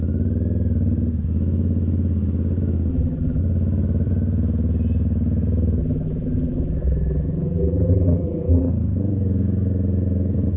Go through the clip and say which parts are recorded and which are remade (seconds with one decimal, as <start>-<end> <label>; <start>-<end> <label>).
0.0-2.9 recorded; 2.9-3.4 remade; 3.4-5.8 recorded; 5.8-8.7 remade; 8.7-10.6 recorded